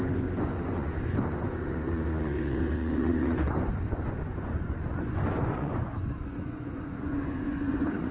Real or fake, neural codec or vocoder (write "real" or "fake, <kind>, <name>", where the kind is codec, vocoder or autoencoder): fake, vocoder, Vocos